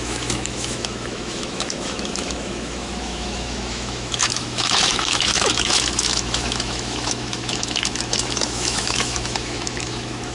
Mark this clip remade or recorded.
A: remade